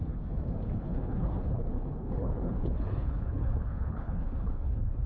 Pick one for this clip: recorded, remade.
remade